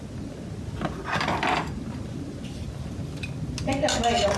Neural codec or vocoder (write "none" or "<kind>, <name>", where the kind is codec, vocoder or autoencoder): none